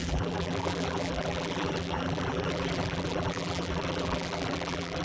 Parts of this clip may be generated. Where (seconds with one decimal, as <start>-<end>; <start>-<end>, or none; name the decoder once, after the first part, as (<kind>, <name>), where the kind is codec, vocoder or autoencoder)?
0.0-5.0 (vocoder, BigVGAN v2)